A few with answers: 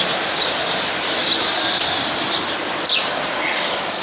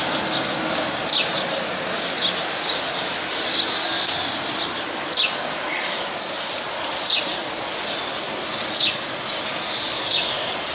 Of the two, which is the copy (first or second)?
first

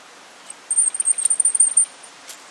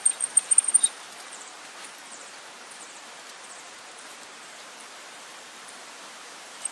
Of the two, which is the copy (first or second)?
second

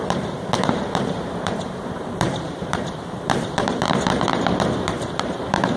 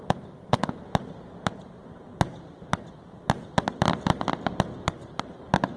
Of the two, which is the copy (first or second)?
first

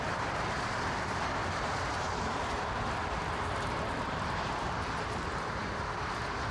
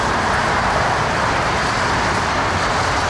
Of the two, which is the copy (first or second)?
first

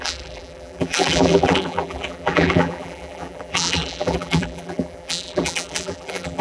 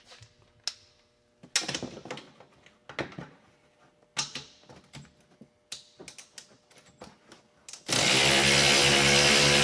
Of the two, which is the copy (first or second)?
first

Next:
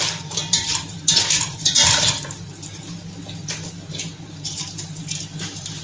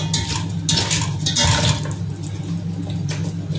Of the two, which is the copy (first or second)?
first